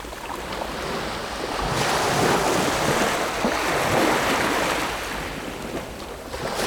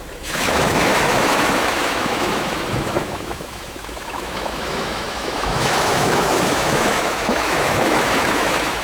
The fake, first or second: second